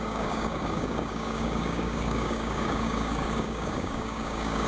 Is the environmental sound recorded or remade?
remade